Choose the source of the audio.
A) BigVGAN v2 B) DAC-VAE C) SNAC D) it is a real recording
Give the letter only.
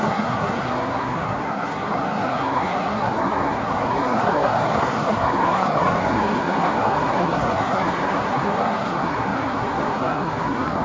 C